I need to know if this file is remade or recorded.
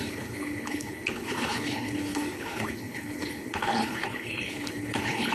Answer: remade